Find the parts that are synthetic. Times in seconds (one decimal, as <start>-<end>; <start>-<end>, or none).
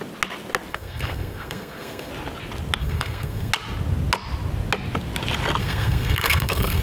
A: 0.7-2.1; 2.8-3.5; 5.6-6.8